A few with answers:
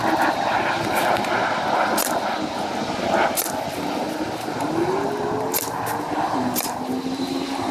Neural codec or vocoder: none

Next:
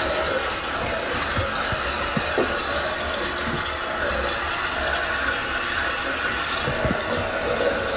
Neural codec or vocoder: none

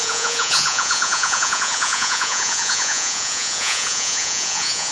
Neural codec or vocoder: vocoder, Vocos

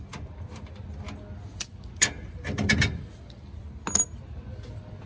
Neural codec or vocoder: none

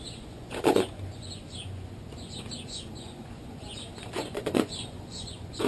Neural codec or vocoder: vocoder, Vocos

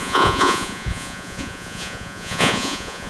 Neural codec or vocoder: vocoder, Vocos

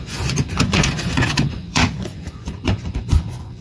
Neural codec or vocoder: vocoder, Vocos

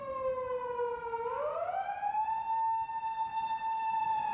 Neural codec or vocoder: none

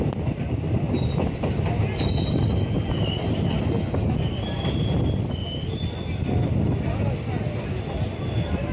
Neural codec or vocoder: none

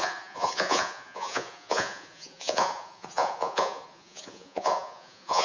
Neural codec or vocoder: vocoder, Vocos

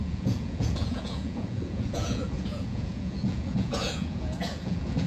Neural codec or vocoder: vocoder, Vocos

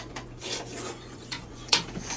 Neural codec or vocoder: vocoder, Vocos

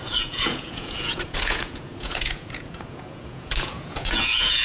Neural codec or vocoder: vocoder, Vocos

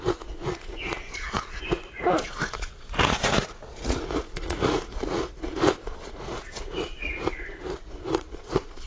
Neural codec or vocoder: vocoder, Vocos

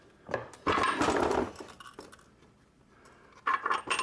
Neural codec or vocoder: none